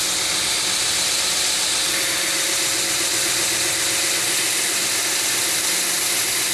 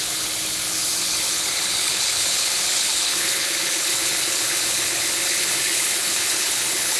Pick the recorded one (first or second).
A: first